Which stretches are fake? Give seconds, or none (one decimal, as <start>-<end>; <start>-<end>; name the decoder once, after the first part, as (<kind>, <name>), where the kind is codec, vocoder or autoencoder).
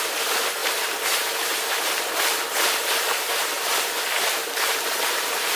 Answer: 0.0-5.6 (vocoder, BigVGAN v2)